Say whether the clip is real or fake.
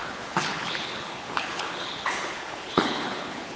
fake